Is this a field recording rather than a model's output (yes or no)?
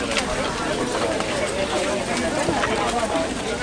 yes